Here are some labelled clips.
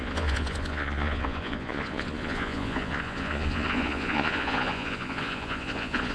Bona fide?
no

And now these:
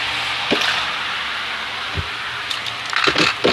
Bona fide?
yes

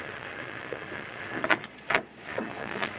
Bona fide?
no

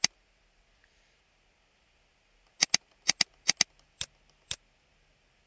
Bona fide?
yes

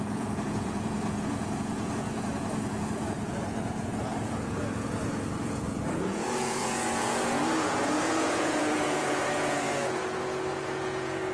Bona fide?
no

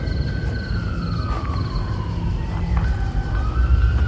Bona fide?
yes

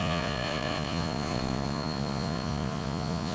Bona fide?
no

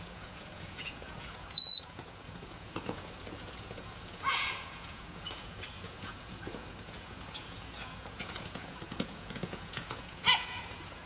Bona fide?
no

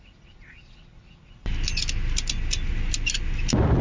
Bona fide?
yes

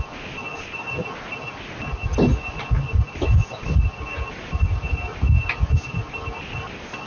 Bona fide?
yes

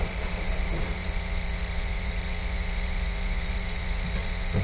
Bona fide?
no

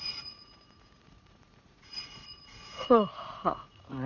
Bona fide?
no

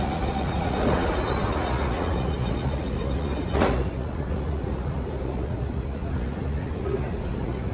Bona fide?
no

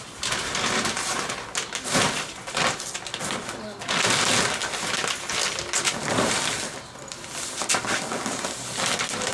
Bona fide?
yes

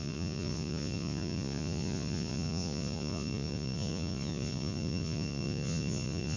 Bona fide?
no